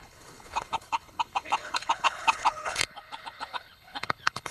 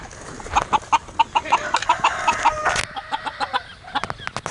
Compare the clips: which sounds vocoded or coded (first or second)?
first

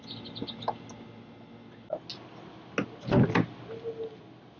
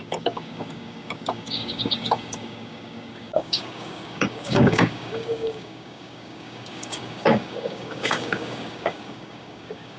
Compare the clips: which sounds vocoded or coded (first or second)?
second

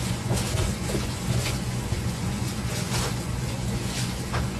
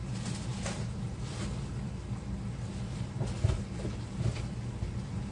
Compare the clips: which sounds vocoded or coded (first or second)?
first